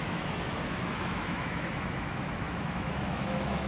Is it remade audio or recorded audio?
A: remade